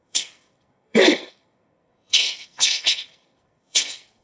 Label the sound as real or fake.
fake